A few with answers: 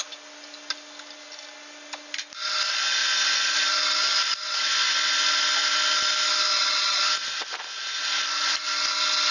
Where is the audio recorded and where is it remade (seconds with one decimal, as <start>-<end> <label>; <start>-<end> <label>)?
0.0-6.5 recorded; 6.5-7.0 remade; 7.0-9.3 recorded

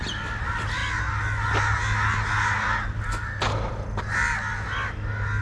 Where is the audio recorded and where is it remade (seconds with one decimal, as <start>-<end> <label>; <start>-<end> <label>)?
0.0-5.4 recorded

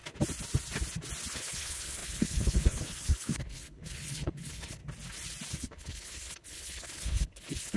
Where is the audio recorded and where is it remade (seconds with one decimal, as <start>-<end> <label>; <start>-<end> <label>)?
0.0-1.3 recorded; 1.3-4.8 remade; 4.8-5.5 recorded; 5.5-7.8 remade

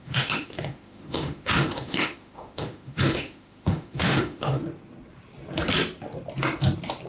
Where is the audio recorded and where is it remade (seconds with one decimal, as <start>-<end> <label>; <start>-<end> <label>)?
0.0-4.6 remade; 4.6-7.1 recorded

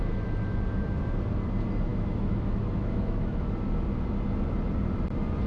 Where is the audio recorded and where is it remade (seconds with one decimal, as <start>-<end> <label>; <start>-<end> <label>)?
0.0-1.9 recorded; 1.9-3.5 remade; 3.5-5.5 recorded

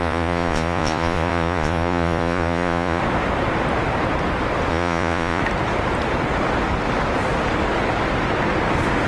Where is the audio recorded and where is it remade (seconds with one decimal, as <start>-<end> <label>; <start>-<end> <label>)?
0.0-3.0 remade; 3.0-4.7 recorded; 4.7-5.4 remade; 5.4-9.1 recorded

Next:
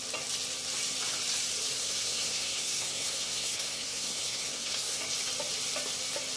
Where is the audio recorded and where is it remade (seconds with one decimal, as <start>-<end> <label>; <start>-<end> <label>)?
0.0-1.8 recorded; 1.8-5.0 remade; 5.0-6.4 recorded